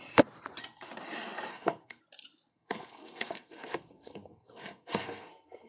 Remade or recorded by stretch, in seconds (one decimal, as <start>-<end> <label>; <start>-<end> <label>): 0.0-1.5 recorded; 1.5-2.0 remade; 2.0-2.5 recorded; 2.5-5.7 remade